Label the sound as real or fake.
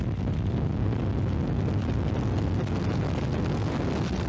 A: real